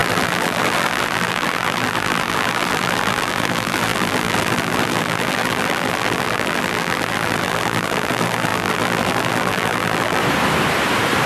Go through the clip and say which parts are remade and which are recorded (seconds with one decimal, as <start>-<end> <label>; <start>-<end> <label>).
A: 0.0-10.2 remade; 10.2-11.3 recorded